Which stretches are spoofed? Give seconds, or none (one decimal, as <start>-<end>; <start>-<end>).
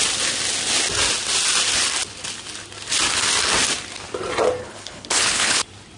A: 4.6-5.6